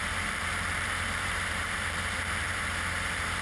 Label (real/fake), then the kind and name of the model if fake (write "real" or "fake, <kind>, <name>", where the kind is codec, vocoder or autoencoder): fake, vocoder, BigVGAN v2